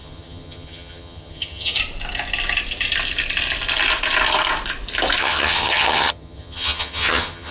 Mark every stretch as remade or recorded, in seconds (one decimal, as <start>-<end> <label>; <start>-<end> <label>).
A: 0.0-1.8 remade; 1.8-5.2 recorded; 5.2-7.5 remade